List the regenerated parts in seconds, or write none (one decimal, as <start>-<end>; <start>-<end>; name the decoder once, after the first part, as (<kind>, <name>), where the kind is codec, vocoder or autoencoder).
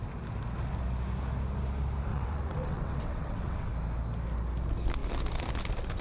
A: 2.1-3.7 (vocoder, WaveNeXt)